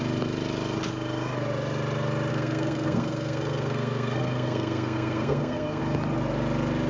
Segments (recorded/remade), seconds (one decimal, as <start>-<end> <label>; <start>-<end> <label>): 0.0-2.3 recorded; 2.3-5.8 remade; 5.8-6.9 recorded